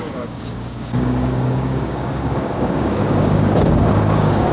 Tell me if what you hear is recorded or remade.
remade